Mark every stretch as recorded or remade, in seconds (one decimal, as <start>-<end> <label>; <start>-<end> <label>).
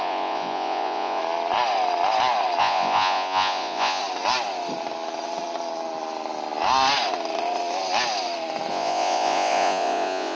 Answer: 0.0-1.2 remade; 1.2-2.6 recorded; 2.6-4.0 remade; 4.0-8.7 recorded; 8.7-10.4 remade